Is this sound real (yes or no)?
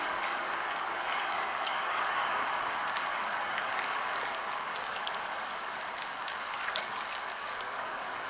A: no